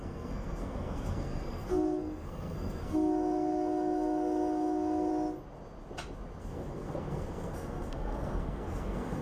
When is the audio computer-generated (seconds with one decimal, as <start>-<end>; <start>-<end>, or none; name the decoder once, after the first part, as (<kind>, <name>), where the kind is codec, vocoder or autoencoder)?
0.0-5.1 (codec, SNAC); 6.4-9.2